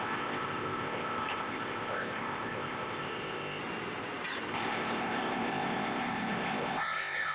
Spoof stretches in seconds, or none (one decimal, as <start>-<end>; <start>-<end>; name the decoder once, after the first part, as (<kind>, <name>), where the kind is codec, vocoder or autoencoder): 0.0-3.6 (codec, ZipCodec); 4.5-7.3